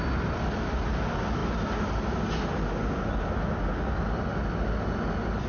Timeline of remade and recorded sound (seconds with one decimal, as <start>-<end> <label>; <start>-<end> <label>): 0.0-5.5 recorded